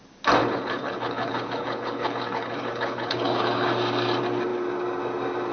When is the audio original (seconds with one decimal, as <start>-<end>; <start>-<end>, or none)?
0.0-0.4; 3.7-5.5